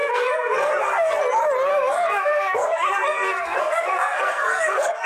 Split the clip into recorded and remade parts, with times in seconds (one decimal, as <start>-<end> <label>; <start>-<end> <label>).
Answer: 0.0-1.2 remade; 1.2-1.7 recorded; 1.7-5.1 remade